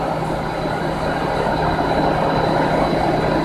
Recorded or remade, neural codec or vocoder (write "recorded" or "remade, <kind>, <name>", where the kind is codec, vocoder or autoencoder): recorded